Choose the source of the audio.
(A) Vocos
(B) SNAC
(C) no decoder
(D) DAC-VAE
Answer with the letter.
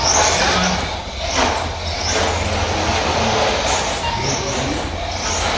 C